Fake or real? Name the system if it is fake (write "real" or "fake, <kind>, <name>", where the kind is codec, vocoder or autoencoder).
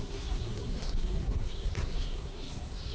fake, codec, SNAC